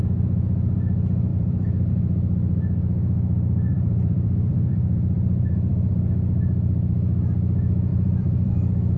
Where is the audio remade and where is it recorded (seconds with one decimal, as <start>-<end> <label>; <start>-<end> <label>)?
0.0-1.3 recorded; 1.3-1.9 remade; 1.9-3.7 recorded; 3.7-5.9 remade; 5.9-7.9 recorded; 7.9-8.5 remade; 8.5-9.0 recorded